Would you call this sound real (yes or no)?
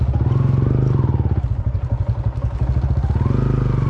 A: yes